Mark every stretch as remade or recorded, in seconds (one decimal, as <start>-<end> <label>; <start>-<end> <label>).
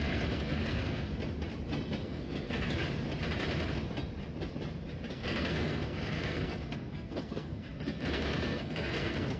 0.0-1.1 remade; 1.1-2.0 recorded; 2.0-2.8 remade; 2.8-5.1 recorded; 5.1-9.4 remade